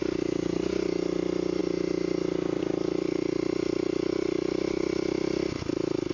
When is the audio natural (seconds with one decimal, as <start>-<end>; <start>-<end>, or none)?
0.0-6.1